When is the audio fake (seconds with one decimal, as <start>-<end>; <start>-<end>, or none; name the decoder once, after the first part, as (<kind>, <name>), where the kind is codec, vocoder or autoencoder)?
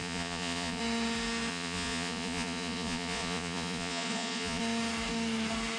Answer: 0.0-0.8 (vocoder, Vocos); 1.5-4.6